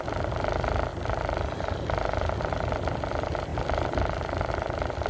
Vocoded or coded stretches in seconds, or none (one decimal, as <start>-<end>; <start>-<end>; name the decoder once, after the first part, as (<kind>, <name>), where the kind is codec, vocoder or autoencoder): none